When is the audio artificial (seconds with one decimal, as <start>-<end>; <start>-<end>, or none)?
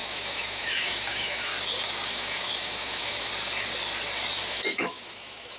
0.0-1.5; 2.1-3.3; 4.5-5.6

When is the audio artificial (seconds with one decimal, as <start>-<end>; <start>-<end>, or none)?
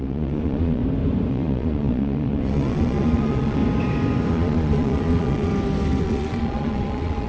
0.0-0.8; 1.3-3.6; 4.3-5.5; 6.0-7.3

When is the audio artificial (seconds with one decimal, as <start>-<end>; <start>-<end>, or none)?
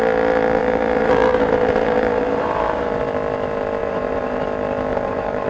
0.6-3.0; 3.8-4.4; 4.9-5.5